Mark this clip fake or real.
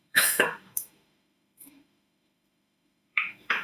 fake